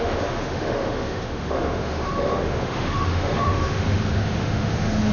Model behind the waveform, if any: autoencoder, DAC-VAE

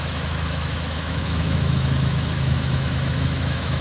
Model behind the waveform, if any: autoencoder, DAC-VAE